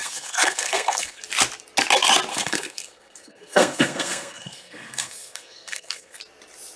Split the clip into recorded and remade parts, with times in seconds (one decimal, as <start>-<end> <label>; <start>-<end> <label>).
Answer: 0.0-1.2 remade; 1.2-2.3 recorded; 2.3-6.2 remade; 6.2-6.8 recorded